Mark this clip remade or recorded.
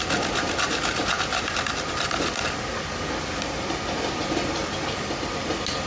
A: recorded